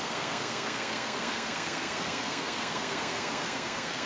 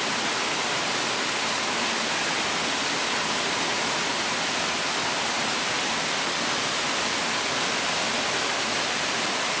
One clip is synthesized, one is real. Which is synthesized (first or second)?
first